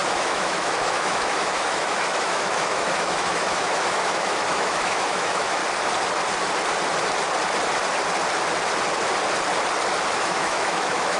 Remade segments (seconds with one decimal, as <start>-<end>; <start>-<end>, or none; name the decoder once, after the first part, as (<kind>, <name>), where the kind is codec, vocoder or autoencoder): 0.0-5.6 (autoencoder, DAC-VAE); 10.2-11.2